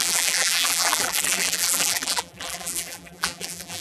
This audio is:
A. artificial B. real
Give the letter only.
A